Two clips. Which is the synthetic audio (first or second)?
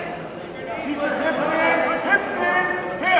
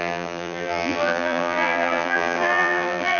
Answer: second